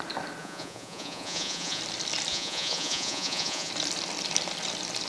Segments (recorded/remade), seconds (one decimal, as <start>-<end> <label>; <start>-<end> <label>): 0.0-0.4 recorded; 0.4-1.8 remade; 1.8-2.3 recorded; 2.3-3.7 remade; 3.7-5.1 recorded